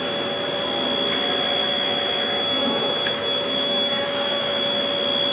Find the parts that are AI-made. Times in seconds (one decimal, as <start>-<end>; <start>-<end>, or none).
1.6-4.8